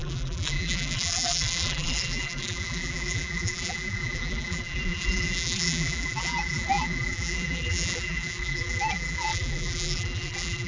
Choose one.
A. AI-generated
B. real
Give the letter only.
A